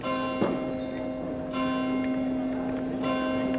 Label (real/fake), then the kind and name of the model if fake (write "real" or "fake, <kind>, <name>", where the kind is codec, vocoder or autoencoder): real